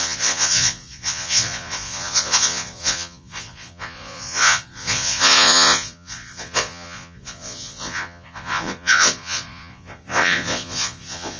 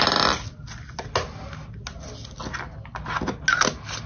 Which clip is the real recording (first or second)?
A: second